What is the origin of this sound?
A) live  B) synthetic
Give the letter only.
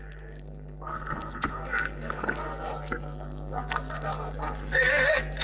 B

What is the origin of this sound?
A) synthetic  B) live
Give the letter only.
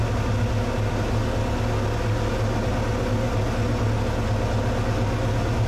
B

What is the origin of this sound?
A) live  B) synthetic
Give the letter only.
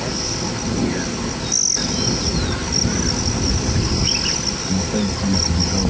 A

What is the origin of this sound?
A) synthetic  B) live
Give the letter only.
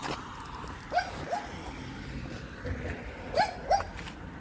B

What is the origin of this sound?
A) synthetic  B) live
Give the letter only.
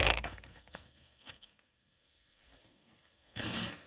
A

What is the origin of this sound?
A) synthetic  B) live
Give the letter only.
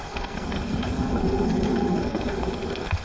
A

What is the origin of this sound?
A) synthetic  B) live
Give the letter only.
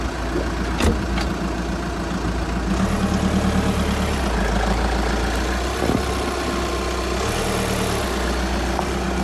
B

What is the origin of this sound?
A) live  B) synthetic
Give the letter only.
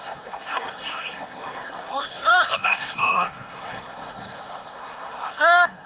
B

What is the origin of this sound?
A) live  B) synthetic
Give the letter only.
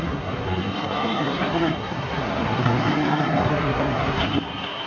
B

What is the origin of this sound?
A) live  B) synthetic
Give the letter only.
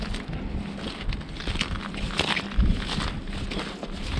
A